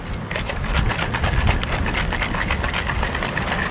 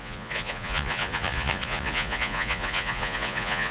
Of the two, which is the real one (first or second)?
first